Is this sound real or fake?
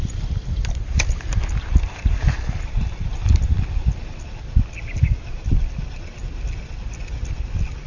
real